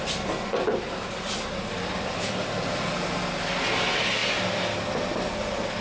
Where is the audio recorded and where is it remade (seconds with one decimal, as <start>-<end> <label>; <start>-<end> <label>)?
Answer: 0.0-5.8 recorded